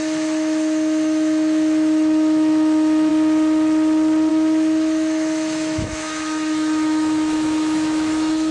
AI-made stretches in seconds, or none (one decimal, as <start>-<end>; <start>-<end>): 0.0-3.1; 4.3-8.5